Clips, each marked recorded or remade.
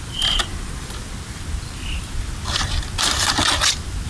recorded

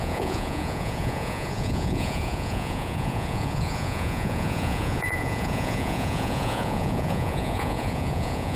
remade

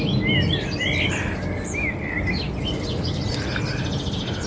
recorded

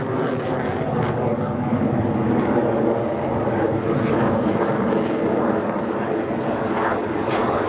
remade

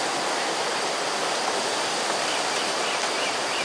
recorded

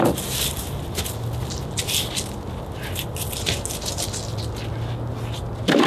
recorded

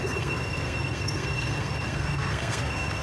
remade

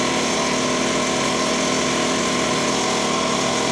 recorded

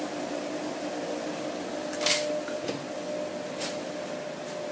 recorded